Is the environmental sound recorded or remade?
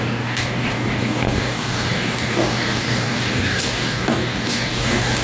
remade